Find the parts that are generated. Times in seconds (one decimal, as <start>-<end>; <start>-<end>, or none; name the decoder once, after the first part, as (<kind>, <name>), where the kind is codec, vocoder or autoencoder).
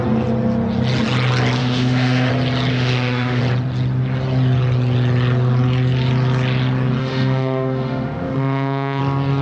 1.6-2.3 (autoencoder, DAC-VAE); 2.7-3.4; 7.0-9.0